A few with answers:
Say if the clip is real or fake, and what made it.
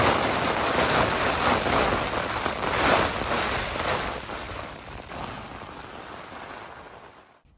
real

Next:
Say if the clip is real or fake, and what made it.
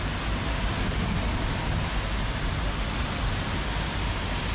real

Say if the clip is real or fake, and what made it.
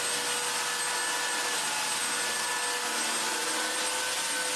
real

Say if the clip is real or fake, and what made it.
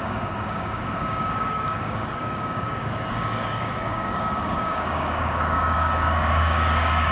fake, codec, DAC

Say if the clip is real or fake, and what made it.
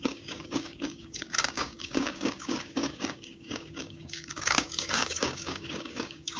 fake, codec, DAC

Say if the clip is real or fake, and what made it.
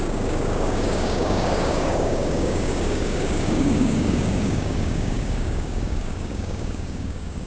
fake, codec, DAC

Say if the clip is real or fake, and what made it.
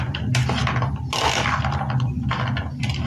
real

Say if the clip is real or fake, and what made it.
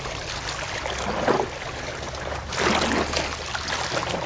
real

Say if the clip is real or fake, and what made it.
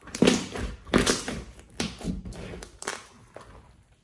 real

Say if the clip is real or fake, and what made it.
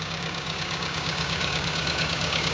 fake, codec, DAC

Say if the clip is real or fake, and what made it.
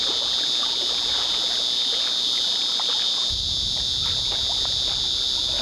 real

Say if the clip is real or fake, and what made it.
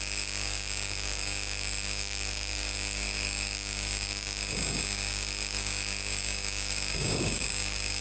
fake, codec, DAC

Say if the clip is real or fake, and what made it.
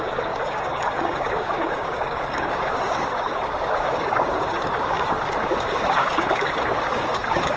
fake, codec, DAC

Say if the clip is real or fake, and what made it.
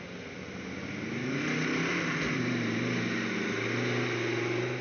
real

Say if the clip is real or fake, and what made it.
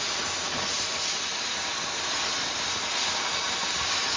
real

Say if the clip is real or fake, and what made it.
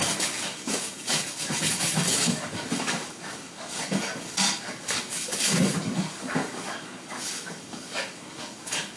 fake, codec, DAC